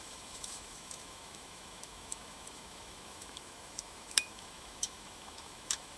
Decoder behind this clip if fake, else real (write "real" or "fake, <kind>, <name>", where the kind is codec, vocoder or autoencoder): fake, autoencoder, DAC-VAE